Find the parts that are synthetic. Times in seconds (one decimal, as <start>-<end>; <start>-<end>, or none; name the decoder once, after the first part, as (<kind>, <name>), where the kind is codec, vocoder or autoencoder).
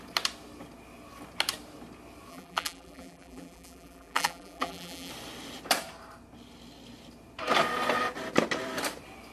2.3-5.1 (vocoder, BigVGAN v2)